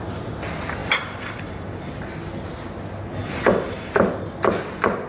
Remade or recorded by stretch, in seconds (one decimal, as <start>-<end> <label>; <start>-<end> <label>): 0.0-0.8 recorded; 0.8-1.9 remade; 1.9-3.2 recorded; 3.2-3.9 remade; 3.9-5.1 recorded